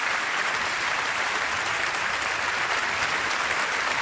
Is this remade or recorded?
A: recorded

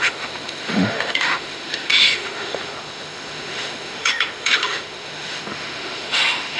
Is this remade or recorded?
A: remade